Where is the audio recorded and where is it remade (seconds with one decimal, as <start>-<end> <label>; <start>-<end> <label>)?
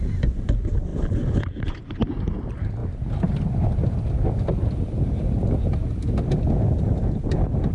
0.0-7.7 recorded